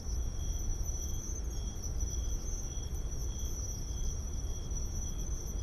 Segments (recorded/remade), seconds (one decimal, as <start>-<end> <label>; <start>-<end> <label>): 0.0-0.7 recorded; 0.7-1.8 remade; 1.8-5.6 recorded